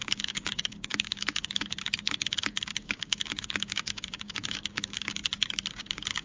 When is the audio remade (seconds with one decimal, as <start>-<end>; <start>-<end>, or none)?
0.0-5.2; 5.7-6.2